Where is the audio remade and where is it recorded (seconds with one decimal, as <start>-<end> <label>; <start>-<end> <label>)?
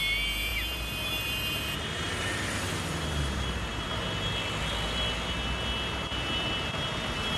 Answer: 0.0-0.5 recorded; 0.5-3.9 remade; 3.9-7.4 recorded